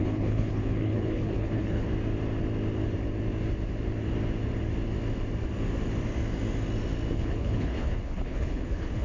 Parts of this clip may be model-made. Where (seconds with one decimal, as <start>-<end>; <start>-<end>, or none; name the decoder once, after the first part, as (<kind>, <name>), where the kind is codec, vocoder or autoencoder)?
0.0-1.9 (codec, HILCodec); 7.1-9.0